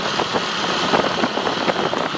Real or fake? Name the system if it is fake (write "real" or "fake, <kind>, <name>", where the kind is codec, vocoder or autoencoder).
real